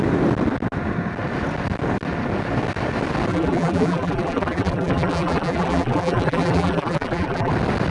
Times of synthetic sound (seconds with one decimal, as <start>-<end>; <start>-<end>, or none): 3.3-7.5